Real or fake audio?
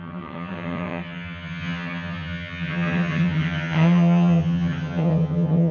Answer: fake